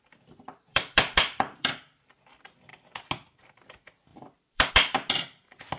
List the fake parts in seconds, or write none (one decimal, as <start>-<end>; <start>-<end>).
0.7-2.1; 4.1-4.7